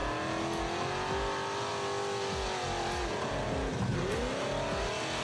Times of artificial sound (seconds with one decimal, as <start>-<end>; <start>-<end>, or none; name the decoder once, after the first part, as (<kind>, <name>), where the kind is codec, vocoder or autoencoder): none